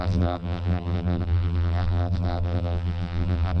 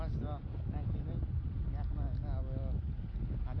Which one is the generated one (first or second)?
first